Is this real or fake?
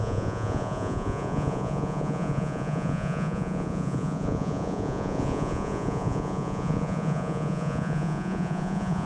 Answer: fake